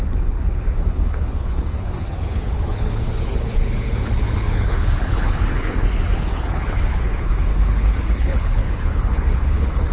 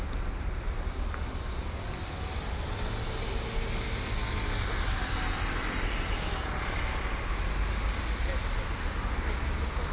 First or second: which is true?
second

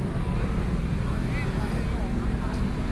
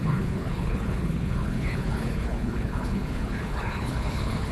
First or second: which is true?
first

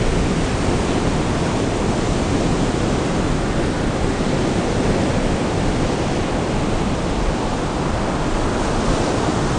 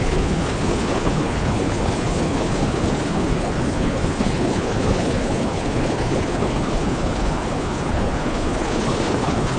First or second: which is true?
first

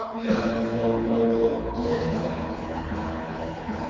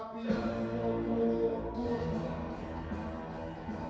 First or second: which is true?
second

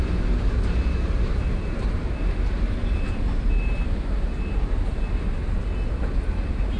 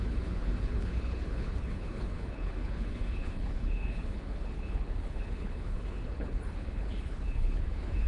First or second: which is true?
first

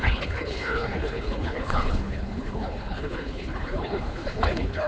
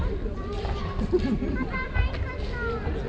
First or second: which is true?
second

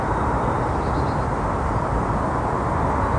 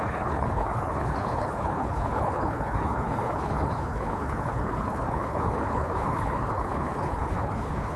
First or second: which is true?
first